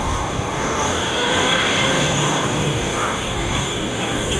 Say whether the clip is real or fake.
fake